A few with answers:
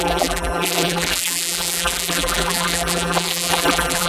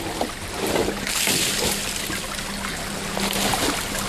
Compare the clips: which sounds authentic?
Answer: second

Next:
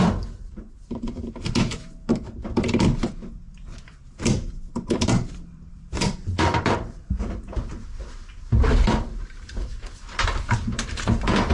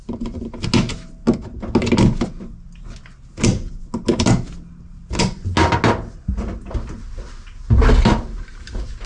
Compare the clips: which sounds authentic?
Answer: second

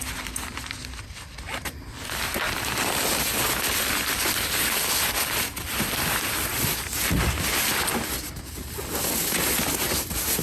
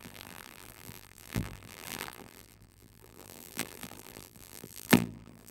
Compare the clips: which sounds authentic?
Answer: first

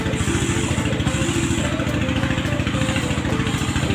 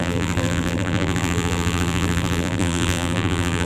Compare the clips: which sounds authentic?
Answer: first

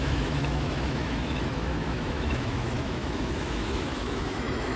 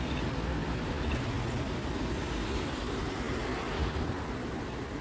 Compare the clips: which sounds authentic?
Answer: second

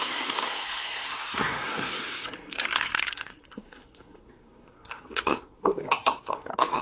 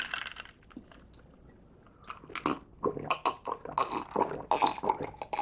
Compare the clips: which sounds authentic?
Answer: second